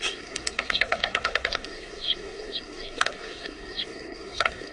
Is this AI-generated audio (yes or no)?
yes